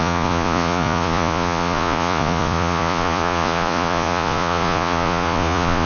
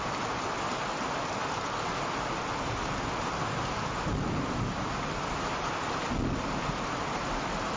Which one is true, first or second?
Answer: second